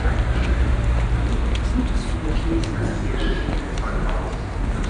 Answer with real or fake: real